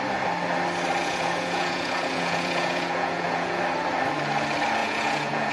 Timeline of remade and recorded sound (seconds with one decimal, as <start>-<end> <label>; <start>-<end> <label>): 0.0-1.0 recorded; 1.0-3.6 remade; 3.6-4.8 recorded; 4.8-5.5 remade